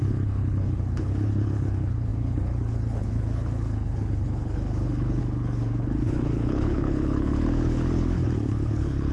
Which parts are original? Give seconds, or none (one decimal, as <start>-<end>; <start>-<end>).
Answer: none